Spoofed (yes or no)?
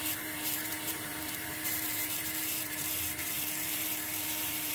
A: yes